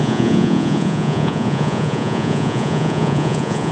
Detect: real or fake fake